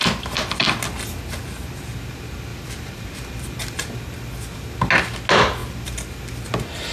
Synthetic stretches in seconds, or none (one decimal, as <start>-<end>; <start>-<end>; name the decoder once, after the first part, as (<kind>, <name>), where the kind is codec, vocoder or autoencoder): 2.5-3.6 (vocoder, BigVGAN v2)